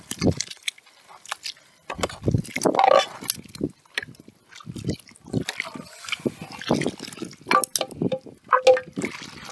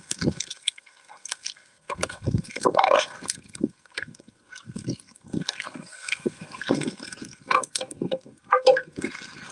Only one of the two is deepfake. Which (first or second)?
second